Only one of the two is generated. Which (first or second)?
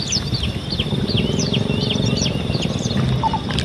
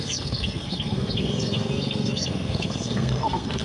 second